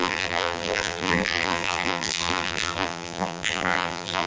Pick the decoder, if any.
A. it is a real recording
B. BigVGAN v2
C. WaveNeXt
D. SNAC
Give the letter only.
B